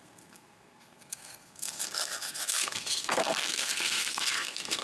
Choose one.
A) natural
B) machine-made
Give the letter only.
B